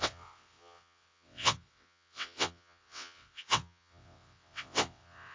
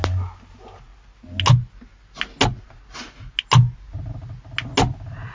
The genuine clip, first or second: second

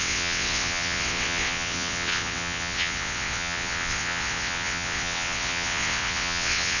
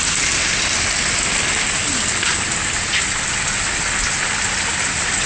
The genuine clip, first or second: second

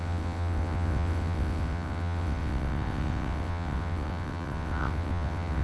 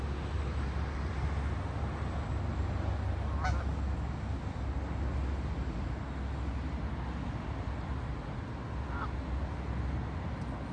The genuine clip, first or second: second